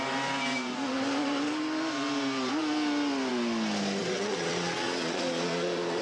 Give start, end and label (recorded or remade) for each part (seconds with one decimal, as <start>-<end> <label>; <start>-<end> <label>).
0.0-4.0 recorded; 4.0-6.0 remade